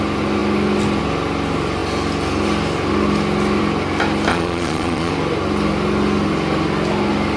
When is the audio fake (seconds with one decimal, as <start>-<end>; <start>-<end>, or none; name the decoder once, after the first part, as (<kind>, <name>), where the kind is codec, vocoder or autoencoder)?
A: 4.3-5.1 (vocoder, Vocos)

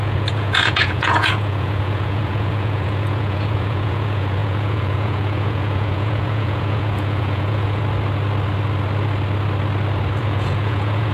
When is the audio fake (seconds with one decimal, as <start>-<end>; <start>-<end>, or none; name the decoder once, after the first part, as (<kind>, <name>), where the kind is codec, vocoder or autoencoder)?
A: 0.0-7.8 (vocoder, Vocos); 10.2-11.1

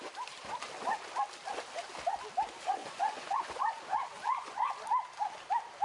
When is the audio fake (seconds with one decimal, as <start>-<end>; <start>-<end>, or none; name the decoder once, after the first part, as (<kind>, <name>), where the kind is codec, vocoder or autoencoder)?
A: 2.8-4.7 (vocoder, Vocos)

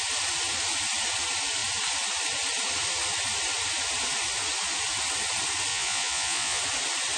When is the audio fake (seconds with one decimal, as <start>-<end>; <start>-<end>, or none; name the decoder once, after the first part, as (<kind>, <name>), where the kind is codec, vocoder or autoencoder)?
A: 5.7-6.6 (vocoder, Vocos)

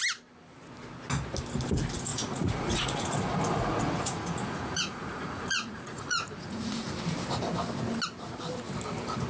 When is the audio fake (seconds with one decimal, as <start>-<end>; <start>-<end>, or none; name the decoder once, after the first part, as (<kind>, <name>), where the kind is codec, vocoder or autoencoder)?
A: 2.1-6.9 (vocoder, Vocos)